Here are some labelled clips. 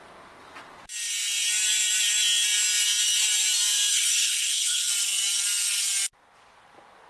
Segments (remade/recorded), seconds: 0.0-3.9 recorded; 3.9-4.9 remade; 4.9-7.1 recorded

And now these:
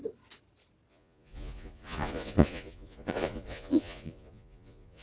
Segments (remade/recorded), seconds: 0.0-0.9 recorded; 0.9-5.0 remade

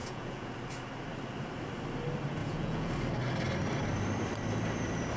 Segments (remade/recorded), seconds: 0.0-0.5 remade; 0.5-2.4 recorded; 2.4-2.9 remade; 2.9-5.2 recorded